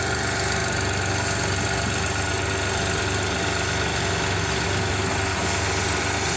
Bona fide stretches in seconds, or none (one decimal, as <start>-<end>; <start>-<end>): 0.0-6.4